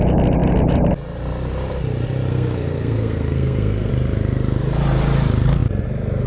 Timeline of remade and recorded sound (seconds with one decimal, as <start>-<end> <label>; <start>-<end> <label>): 0.0-2.3 recorded; 2.3-3.9 remade; 3.9-6.3 recorded